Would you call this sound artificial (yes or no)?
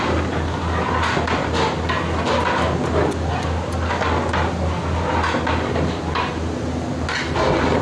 no